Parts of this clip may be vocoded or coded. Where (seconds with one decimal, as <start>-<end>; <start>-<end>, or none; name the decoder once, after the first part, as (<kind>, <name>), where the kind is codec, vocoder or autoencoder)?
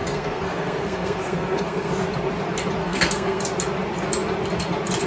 0.0-1.9 (codec, SNAC); 2.8-3.4